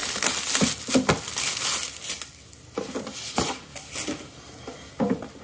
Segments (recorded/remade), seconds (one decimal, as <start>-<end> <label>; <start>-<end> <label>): 0.0-3.2 recorded; 3.2-3.7 remade; 3.7-5.0 recorded; 5.0-5.4 remade